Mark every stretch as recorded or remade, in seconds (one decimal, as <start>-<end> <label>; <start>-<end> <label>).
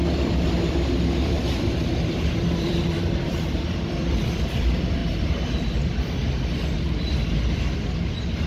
0.0-5.0 remade; 5.0-8.5 recorded